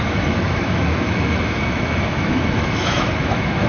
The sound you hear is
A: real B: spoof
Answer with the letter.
B